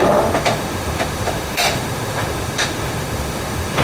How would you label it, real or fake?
fake